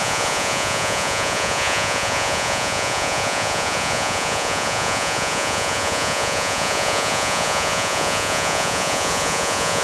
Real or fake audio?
fake